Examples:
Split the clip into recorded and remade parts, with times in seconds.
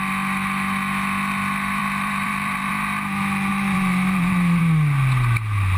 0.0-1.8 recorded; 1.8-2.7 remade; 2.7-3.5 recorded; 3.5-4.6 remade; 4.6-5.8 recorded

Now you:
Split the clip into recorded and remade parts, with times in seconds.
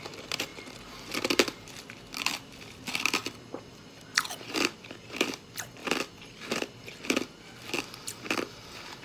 0.0-3.2 remade; 3.2-4.4 recorded; 4.4-5.8 remade; 5.8-7.9 recorded; 7.9-9.0 remade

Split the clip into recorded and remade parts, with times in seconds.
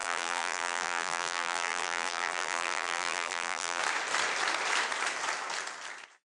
0.0-3.8 remade; 3.8-6.3 recorded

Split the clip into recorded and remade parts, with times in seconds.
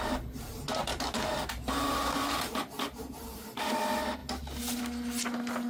0.0-0.9 recorded; 0.9-3.7 remade; 3.7-5.7 recorded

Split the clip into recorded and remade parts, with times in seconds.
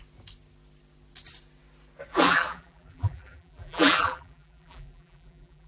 0.0-2.1 recorded; 2.1-5.7 remade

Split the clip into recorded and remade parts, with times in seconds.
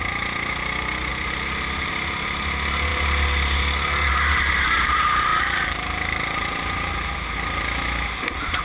0.0-1.1 recorded; 1.1-1.9 remade; 1.9-5.3 recorded; 5.3-6.2 remade; 6.2-8.6 recorded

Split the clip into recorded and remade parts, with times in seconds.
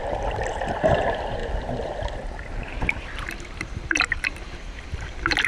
0.0-0.9 recorded; 0.9-1.4 remade; 1.4-3.2 recorded; 3.2-5.5 remade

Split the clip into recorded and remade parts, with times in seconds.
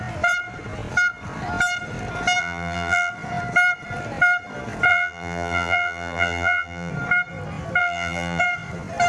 0.0-2.4 recorded; 2.4-3.1 remade; 3.1-4.9 recorded; 4.9-6.9 remade; 6.9-7.8 recorded; 7.8-8.4 remade; 8.4-9.1 recorded